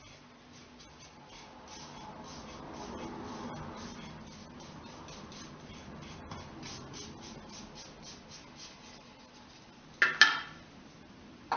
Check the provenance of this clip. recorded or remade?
recorded